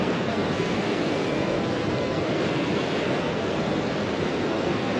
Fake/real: fake